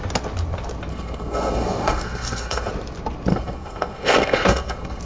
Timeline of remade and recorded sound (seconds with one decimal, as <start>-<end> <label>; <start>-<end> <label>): 0.0-0.9 recorded; 0.9-2.7 remade; 2.7-3.3 recorded; 3.3-5.0 remade